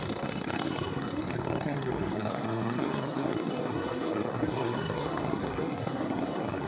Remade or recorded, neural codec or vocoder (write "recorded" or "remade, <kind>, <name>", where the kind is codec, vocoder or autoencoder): remade, codec, SNAC